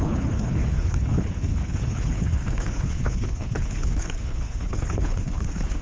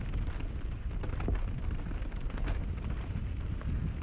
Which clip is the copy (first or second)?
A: first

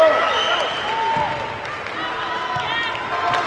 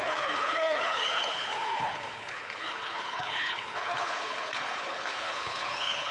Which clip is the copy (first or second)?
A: second